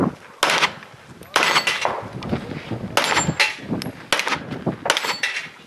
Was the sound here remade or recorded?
recorded